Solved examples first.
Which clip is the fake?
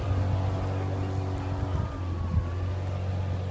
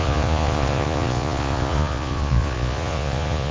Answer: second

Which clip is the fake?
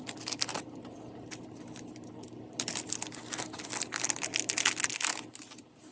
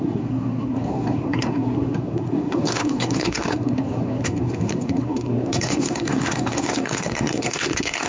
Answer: second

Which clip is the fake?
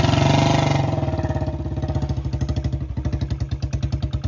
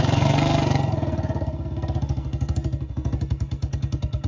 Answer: second